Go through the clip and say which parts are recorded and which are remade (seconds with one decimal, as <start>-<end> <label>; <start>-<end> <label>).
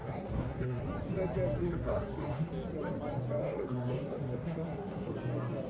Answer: 0.0-0.8 remade; 0.8-1.6 recorded; 1.6-2.5 remade; 2.5-3.4 recorded; 3.4-5.1 remade; 5.1-5.7 recorded